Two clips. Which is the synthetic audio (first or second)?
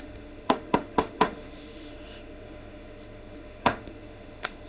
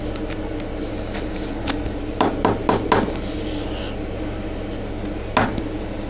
first